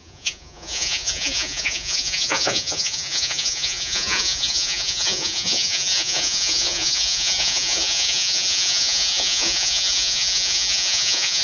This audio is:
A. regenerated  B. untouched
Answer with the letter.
A